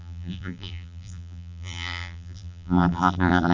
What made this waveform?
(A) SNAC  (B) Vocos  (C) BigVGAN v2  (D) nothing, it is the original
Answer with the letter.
C